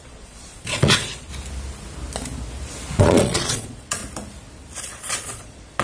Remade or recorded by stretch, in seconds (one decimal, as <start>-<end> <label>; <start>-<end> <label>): 0.0-1.3 remade; 1.3-3.0 recorded; 3.0-4.0 remade; 4.0-4.8 recorded; 4.8-5.8 remade